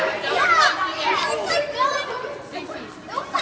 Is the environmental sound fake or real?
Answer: real